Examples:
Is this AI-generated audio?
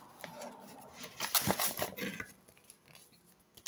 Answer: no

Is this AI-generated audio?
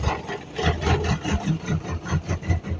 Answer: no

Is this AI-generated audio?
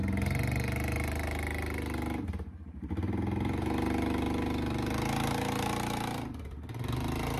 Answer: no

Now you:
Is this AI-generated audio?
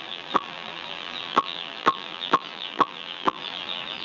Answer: yes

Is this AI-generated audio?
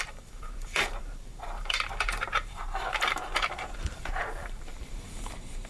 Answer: yes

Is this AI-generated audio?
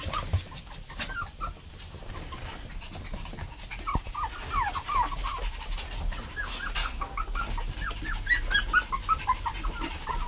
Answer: no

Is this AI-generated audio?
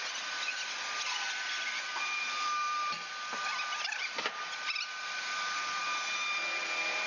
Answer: yes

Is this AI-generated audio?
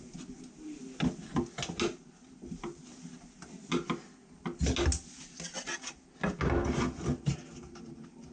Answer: no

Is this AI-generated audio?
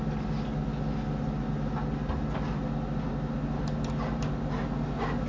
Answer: no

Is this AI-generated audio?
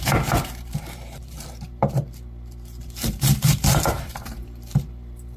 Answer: yes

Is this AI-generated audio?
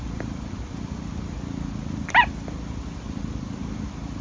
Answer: yes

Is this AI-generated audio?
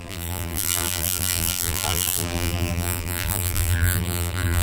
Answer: yes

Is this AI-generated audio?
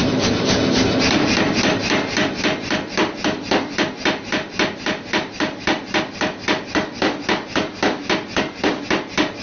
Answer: no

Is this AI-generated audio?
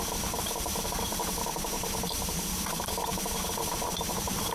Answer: yes